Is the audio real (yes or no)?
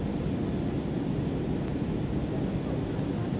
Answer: yes